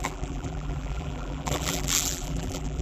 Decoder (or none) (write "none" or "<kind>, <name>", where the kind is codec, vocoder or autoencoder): vocoder, BigVGAN v2